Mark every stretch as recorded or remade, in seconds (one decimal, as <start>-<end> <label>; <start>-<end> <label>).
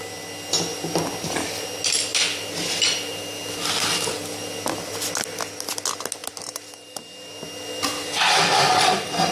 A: 0.0-9.3 recorded